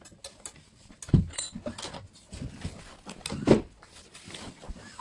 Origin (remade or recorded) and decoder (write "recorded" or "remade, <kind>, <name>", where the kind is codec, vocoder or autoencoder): recorded